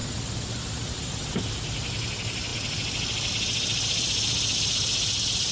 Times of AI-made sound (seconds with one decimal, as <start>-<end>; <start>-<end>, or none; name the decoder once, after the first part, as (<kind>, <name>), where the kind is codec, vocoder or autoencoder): none